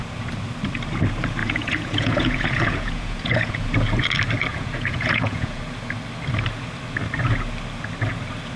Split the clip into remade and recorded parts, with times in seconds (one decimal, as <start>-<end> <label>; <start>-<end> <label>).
0.0-1.4 recorded; 1.4-3.6 remade; 3.6-4.5 recorded; 4.5-5.6 remade; 5.6-8.6 recorded